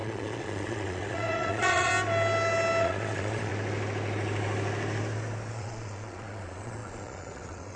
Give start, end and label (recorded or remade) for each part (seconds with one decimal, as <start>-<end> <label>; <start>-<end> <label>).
0.0-1.9 remade; 1.9-2.8 recorded; 2.8-3.5 remade; 3.5-5.5 recorded; 5.5-7.8 remade